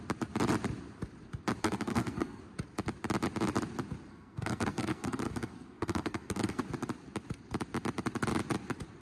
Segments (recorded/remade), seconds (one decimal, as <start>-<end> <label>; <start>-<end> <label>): 0.0-1.6 recorded; 1.6-2.4 remade; 2.4-4.1 recorded; 4.1-6.6 remade; 6.6-9.0 recorded

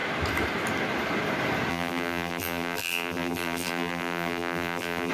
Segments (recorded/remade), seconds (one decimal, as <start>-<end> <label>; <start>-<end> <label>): 0.0-1.7 recorded; 1.7-5.1 remade

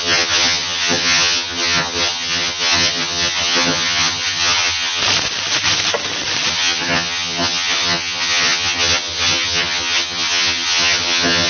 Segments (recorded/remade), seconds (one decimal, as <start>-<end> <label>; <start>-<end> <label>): 0.0-5.0 remade; 5.0-6.5 recorded; 6.5-11.5 remade

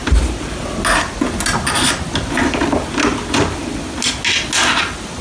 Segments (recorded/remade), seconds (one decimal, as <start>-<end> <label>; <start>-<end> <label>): 0.0-5.2 recorded

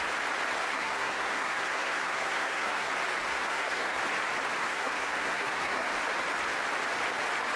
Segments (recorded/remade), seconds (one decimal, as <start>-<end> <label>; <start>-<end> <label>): 0.0-0.6 recorded; 0.6-2.9 remade; 2.9-3.3 recorded; 3.3-4.0 remade; 4.0-4.6 recorded; 4.6-5.9 remade; 5.9-7.6 recorded

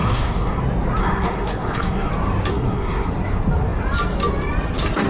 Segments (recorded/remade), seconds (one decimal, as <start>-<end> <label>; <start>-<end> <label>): 0.0-0.6 remade; 0.6-1.0 recorded; 1.0-2.1 remade; 2.1-2.5 recorded; 2.5-3.1 remade; 3.1-5.1 recorded